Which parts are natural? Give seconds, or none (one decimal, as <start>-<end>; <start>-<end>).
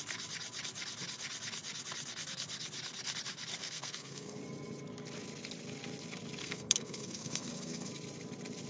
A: 0.0-3.6; 4.4-6.4; 7.9-8.7